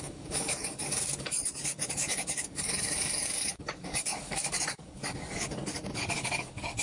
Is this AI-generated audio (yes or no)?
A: yes